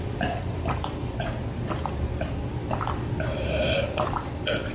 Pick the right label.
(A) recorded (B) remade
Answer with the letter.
A